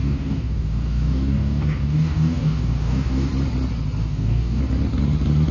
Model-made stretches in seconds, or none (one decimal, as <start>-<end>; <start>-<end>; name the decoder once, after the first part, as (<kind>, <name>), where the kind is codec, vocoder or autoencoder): 0.0-3.3 (codec, DAC); 4.0-4.6